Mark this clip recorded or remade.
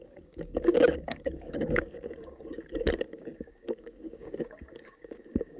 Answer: remade